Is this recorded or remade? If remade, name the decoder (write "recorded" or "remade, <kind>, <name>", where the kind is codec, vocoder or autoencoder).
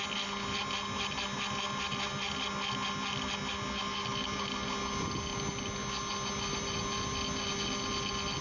recorded